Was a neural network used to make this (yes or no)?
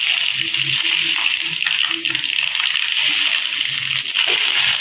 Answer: no